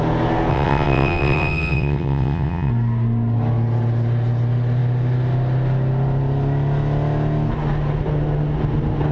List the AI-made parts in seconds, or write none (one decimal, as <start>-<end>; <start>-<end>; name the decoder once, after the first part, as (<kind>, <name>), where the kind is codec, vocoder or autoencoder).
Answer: 0.5-2.7 (vocoder, WaveNeXt)